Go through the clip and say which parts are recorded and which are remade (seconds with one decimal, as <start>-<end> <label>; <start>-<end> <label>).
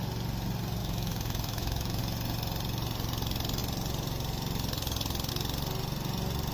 0.0-0.8 recorded; 0.8-2.0 remade; 2.0-6.5 recorded